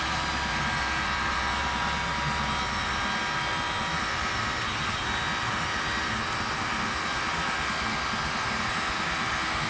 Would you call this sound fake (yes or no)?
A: no